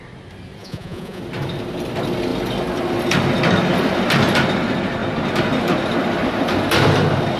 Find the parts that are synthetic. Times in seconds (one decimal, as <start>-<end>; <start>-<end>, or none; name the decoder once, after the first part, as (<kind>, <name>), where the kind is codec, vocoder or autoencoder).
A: 0.6-1.2 (vocoder, Vocos)